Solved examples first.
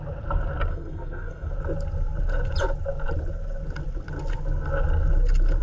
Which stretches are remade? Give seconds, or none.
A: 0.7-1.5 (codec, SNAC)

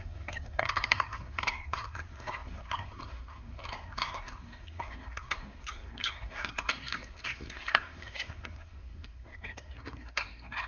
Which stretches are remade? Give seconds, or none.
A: 0.0-10.7 (codec, SNAC)